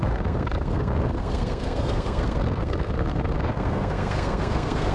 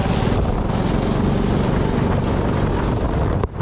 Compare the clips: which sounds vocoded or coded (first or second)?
first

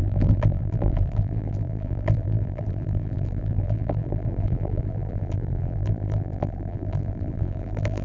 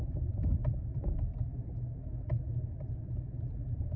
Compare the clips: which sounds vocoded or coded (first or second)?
first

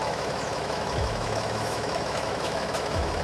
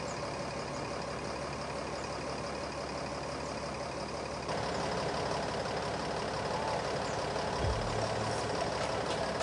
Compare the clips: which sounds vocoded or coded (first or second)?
first